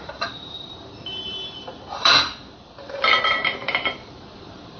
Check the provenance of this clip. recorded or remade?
remade